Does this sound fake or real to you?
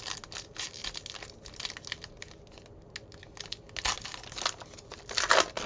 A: real